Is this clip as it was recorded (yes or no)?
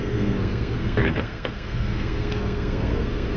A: no